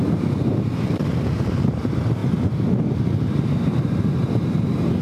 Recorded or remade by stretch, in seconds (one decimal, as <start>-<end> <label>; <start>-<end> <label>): 0.0-5.0 remade